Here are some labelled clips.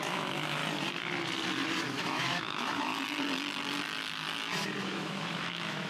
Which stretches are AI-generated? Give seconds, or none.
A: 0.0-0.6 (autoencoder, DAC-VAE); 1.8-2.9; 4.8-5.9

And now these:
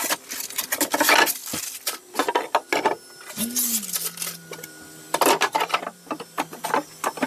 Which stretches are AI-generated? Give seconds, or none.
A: none

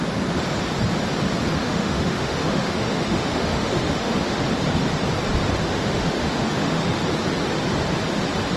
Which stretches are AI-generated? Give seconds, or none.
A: 1.6-4.4 (autoencoder, DAC-VAE); 5.7-7.0

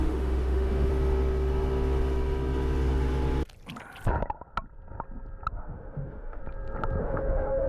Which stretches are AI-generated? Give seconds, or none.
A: 0.0-0.9 (autoencoder, DAC-VAE); 5.5-6.4; 7.0-7.7